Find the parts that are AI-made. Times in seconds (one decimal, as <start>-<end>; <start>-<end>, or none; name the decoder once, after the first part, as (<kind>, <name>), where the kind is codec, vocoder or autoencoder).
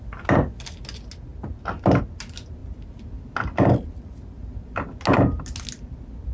1.3-2.0 (vocoder, BigVGAN v2)